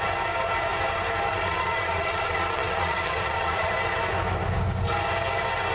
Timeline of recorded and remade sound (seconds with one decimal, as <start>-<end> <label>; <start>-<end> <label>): 0.0-1.3 recorded; 1.3-3.7 remade; 3.7-5.7 recorded

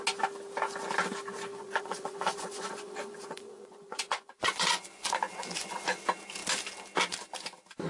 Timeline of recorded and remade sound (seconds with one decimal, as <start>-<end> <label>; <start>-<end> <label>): 0.0-1.5 recorded; 1.5-6.0 remade; 6.0-7.9 recorded

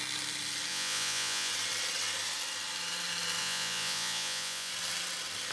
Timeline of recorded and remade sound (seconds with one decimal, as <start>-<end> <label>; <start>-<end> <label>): 0.0-0.7 recorded; 0.7-1.5 remade; 1.5-3.4 recorded; 3.4-4.7 remade; 4.7-5.5 recorded

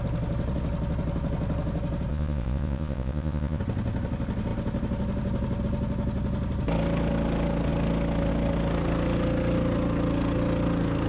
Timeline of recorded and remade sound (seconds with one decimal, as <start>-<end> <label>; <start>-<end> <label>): 0.0-2.1 recorded; 2.1-3.6 remade; 3.6-11.1 recorded

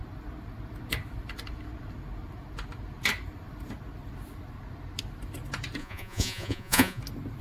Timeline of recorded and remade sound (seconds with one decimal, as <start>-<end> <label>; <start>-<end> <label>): 0.0-5.8 recorded; 5.8-7.0 remade; 7.0-7.4 recorded

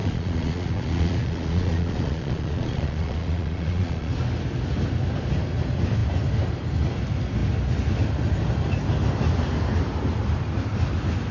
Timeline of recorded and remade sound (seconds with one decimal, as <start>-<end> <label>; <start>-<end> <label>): 0.0-4.1 remade; 4.1-11.3 recorded